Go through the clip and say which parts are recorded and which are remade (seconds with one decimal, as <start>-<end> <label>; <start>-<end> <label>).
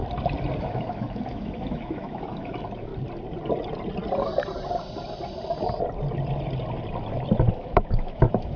0.0-0.6 recorded; 0.6-2.9 remade; 2.9-7.5 recorded; 7.5-8.6 remade